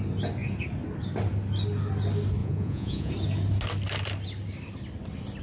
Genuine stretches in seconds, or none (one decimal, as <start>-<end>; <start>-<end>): 0.0-2.4; 3.1-5.4

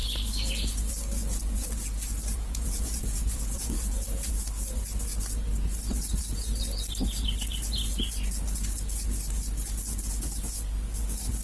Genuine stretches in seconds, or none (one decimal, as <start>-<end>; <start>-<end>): 0.0-2.3; 4.3-11.4

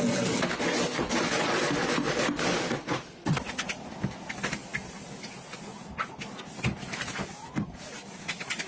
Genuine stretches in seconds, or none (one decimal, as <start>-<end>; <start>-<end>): 0.0-8.7